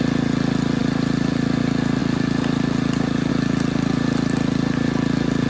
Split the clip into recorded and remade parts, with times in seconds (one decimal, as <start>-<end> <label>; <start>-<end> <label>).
0.0-0.8 recorded; 0.8-1.6 remade; 1.6-2.0 recorded; 2.0-3.3 remade; 3.3-5.5 recorded